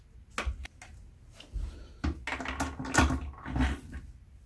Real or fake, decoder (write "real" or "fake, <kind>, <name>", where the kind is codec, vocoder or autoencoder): real